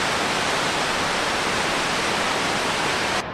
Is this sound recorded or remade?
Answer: recorded